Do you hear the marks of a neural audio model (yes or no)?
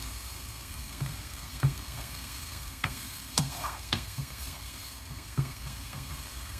yes